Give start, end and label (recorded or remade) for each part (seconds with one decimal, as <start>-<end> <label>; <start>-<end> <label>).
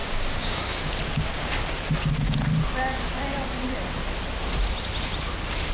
0.0-0.9 remade; 0.9-5.7 recorded